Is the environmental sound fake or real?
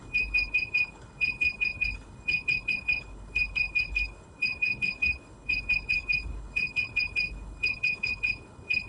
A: fake